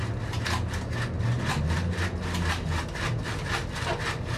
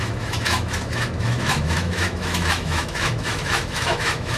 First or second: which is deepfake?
second